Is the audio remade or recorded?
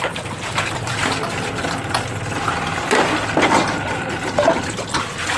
recorded